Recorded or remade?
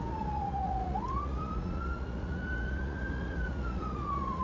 remade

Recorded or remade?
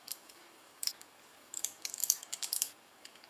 remade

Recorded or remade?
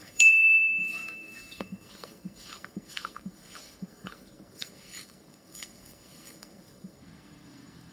remade